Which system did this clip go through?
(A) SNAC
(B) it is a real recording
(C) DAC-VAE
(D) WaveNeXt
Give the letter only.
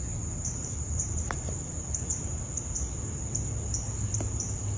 B